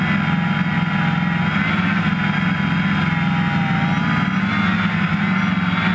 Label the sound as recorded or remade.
recorded